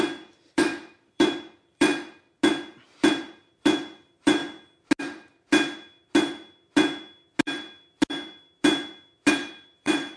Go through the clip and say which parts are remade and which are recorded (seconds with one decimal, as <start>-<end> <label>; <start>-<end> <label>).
0.0-1.9 remade; 1.9-2.7 recorded; 2.7-4.4 remade; 4.4-9.3 recorded; 9.3-10.2 remade